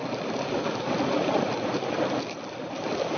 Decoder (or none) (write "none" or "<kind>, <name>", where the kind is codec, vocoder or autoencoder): none